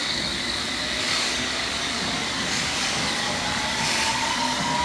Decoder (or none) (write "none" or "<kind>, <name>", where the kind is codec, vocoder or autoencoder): codec, DAC